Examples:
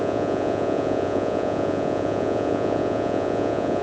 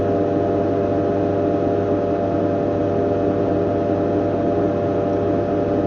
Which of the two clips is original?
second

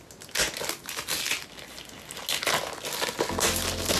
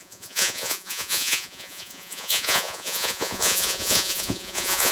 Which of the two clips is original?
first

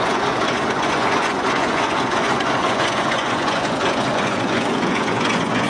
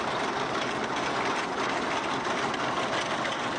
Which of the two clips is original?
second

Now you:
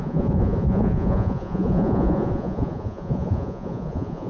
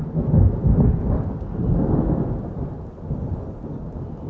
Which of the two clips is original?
second